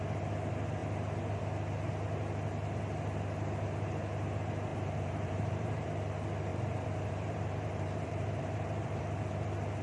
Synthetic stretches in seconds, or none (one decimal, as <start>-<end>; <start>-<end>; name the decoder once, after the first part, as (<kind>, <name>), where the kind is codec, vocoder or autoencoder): 4.7-5.9 (vocoder, BigVGAN v2); 6.5-9.0

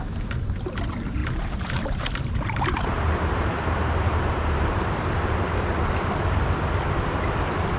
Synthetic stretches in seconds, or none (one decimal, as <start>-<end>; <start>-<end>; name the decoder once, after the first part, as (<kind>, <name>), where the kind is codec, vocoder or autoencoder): 1.2-5.4 (vocoder, BigVGAN v2)